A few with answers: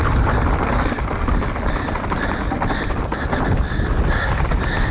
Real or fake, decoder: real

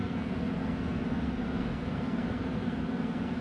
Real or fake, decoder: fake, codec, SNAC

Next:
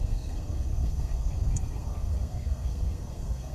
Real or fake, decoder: fake, codec, SNAC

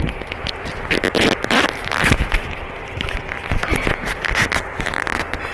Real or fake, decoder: real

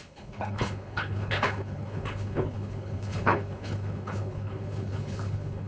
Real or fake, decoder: fake, codec, HILCodec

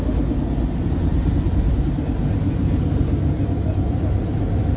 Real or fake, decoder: real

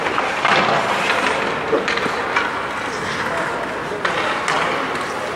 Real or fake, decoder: real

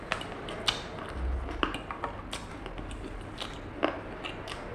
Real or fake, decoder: real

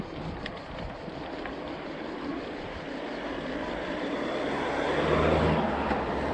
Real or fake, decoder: fake, vocoder, BigVGAN v2